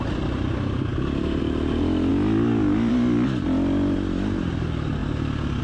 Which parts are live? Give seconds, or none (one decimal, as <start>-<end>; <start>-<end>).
0.0-5.6